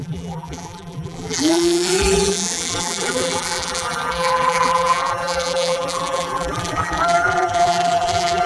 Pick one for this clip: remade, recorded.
remade